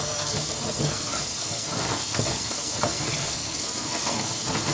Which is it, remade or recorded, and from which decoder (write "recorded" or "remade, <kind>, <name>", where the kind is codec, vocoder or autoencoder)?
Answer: remade, codec, SNAC